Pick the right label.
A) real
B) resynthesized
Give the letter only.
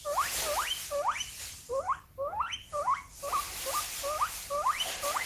A